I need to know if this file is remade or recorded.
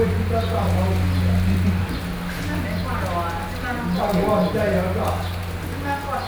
recorded